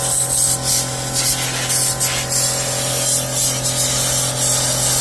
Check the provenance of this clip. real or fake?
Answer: real